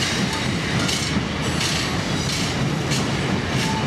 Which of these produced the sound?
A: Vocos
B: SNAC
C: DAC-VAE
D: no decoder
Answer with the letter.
D